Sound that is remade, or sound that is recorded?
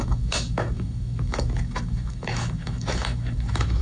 remade